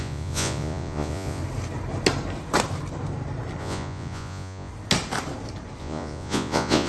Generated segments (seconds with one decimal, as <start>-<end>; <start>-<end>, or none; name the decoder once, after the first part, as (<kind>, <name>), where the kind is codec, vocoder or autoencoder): 0.0-1.4 (vocoder, Vocos); 3.6-4.7; 5.8-6.9